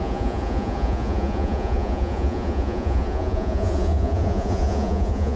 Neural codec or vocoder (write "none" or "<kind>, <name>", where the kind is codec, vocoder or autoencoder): vocoder, Vocos